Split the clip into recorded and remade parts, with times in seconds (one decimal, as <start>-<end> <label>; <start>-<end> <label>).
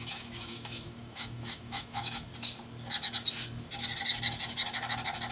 0.0-2.3 remade; 2.3-5.3 recorded